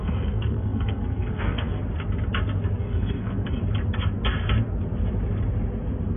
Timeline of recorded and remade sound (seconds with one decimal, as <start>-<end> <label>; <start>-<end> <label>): 0.0-1.8 remade; 1.8-2.8 recorded; 2.8-3.6 remade; 3.6-6.2 recorded

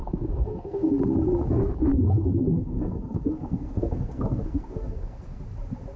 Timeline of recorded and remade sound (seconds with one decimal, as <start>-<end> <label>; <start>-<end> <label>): 0.0-0.9 remade; 0.9-1.9 recorded; 1.9-5.4 remade; 5.4-6.0 recorded